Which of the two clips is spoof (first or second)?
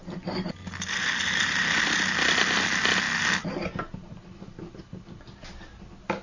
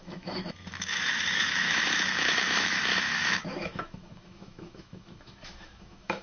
second